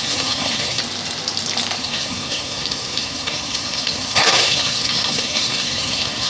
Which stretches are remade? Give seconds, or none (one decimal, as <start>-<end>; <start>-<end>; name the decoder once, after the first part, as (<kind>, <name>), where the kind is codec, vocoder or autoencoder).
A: 0.0-0.8 (codec, SNAC); 1.8-6.3